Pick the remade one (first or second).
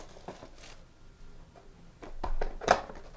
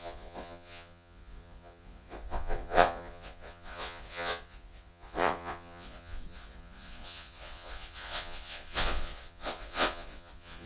second